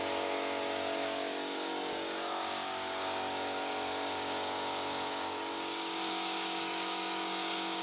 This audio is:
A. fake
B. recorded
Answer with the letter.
A